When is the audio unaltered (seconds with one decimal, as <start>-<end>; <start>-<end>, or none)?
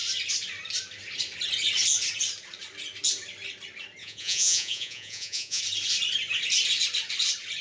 0.0-4.0; 5.6-7.6